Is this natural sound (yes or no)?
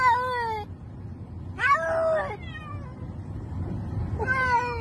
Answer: yes